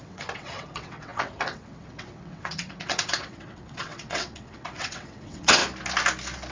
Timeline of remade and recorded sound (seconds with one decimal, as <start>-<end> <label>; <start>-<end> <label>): 0.0-5.6 remade; 5.6-6.5 recorded